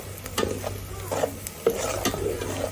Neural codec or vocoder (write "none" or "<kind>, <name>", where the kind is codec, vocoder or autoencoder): none